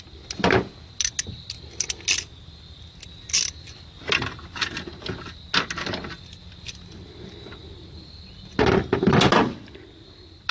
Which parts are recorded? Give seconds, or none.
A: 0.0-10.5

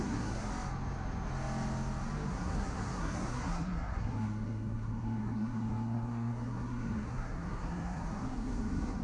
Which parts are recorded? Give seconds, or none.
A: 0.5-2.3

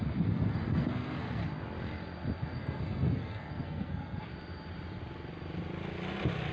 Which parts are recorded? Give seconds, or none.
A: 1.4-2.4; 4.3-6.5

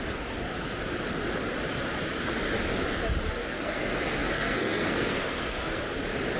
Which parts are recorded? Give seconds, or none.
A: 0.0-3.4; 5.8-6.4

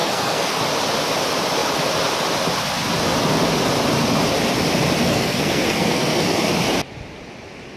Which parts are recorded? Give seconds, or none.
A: 0.6-5.0; 6.5-7.8

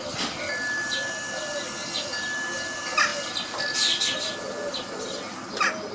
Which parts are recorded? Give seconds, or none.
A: 0.0-5.9

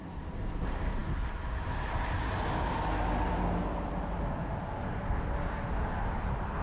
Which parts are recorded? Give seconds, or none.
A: 0.0-6.6

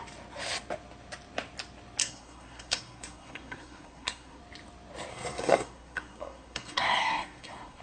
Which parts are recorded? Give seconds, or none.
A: 0.0-2.0; 4.4-5.1